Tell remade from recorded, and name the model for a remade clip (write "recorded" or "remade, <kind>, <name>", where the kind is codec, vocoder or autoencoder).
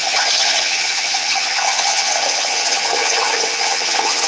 remade, vocoder, HiFi-GAN